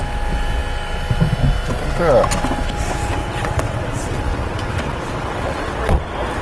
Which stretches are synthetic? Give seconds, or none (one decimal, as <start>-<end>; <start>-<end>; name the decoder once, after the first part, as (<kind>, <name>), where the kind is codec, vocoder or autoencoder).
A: 3.2-6.0 (vocoder, WaveNeXt)